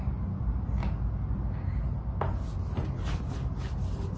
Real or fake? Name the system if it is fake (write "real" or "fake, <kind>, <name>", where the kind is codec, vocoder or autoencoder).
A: real